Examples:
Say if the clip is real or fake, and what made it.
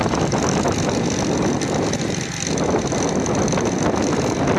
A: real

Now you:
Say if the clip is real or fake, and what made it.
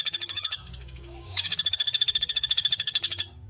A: fake, codec, DAC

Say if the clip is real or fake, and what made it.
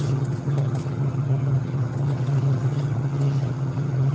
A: fake, vocoder, HiFi-GAN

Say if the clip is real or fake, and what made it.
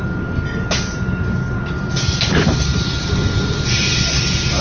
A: real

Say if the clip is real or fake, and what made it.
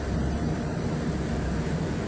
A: fake, vocoder, BigVGAN v2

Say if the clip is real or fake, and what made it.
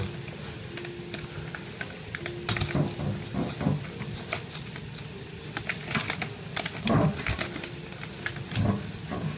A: real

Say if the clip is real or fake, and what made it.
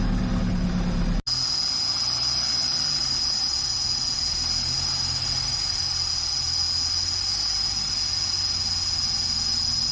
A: real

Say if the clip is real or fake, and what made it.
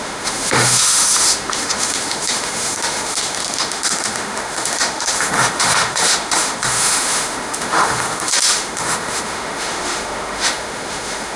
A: fake, autoencoder, DAC-VAE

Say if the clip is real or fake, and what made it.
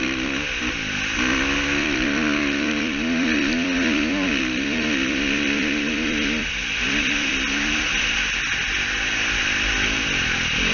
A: fake, vocoder, BigVGAN v2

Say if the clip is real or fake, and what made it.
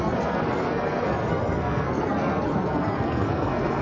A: fake, codec, SNAC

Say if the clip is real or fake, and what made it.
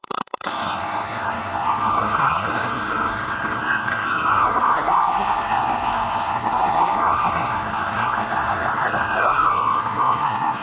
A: fake, codec, SNAC